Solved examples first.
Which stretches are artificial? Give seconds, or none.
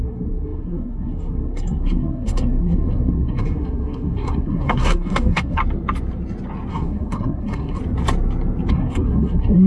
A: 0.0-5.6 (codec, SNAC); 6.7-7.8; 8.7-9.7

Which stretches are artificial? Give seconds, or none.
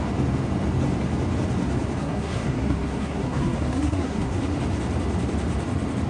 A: 2.0-4.4 (codec, SNAC)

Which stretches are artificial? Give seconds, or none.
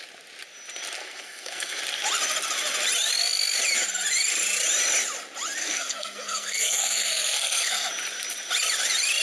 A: 1.0-1.8 (codec, SNAC); 5.6-7.9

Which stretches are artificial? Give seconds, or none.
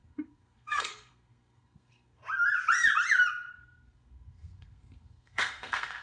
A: 0.0-2.2 (codec, SNAC); 3.5-6.0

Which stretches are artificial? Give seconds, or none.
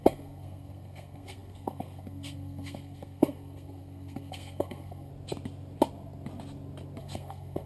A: 0.0-5.1 (codec, SNAC); 7.0-7.7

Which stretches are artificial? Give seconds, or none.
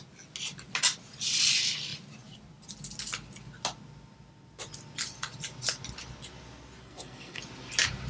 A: 6.8-7.4 (codec, SNAC)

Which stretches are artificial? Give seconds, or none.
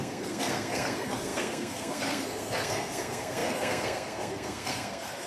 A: 0.0-5.3 (codec, SNAC)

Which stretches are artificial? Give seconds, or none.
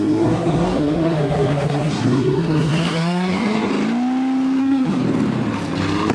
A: 0.0-3.7 (codec, SNAC); 4.6-5.0